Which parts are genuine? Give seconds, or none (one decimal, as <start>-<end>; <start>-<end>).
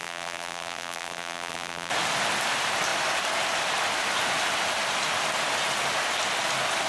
1.9-6.9